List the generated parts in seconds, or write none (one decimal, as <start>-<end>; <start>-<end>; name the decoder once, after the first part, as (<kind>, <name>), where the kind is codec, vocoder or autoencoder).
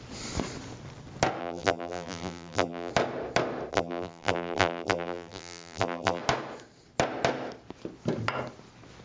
1.4-2.9 (vocoder, BigVGAN v2); 3.7-6.2